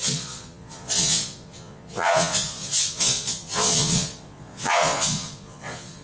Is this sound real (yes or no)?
no